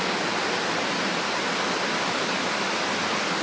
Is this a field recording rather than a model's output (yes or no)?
yes